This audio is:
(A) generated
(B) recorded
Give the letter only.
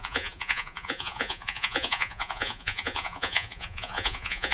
A